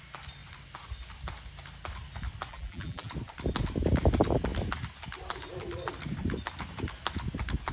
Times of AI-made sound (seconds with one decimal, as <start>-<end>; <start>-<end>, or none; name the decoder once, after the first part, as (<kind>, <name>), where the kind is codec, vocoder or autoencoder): 2.5-3.1 (vocoder, BigVGAN v2)